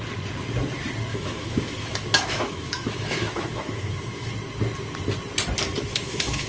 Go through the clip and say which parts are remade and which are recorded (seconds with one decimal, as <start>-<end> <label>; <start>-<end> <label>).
0.0-1.1 recorded; 1.1-4.3 remade; 4.3-5.9 recorded; 5.9-6.5 remade